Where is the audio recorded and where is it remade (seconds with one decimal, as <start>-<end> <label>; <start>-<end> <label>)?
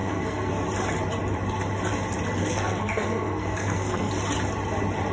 0.0-0.5 remade; 0.5-2.4 recorded; 2.4-4.1 remade; 4.1-5.1 recorded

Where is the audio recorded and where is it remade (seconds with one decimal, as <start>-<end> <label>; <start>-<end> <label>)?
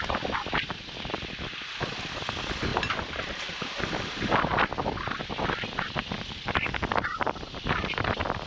0.0-2.7 recorded; 2.7-4.4 remade; 4.4-8.5 recorded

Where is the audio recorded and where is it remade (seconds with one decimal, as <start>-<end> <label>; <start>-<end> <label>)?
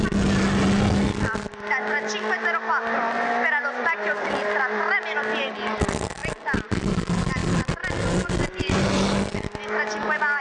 0.0-10.4 recorded